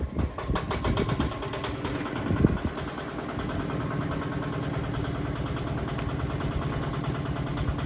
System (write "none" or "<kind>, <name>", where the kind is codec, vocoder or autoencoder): none